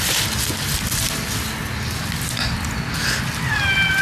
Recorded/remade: recorded